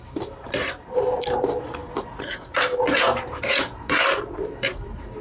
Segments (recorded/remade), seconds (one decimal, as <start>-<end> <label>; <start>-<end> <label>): 0.0-1.8 remade; 1.8-2.9 recorded; 2.9-5.2 remade